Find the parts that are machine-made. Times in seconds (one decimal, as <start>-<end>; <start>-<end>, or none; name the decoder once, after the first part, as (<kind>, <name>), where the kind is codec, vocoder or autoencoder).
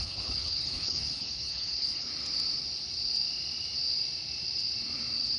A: 0.0-2.1 (codec, HILCodec)